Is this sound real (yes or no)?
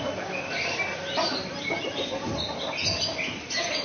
yes